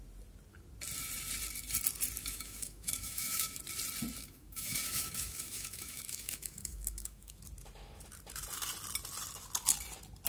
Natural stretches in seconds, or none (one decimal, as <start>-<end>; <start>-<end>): 0.0-2.2; 3.6-4.2; 7.4-10.3